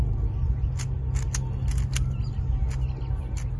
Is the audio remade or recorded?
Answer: recorded